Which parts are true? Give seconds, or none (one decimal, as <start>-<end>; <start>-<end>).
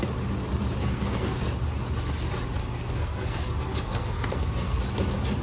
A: 0.0-0.8; 1.4-2.6; 4.8-5.4